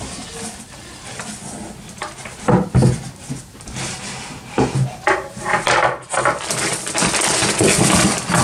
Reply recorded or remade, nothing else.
recorded